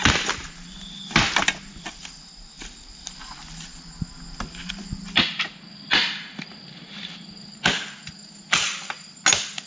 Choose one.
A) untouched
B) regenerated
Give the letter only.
A